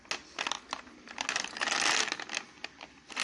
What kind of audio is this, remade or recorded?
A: recorded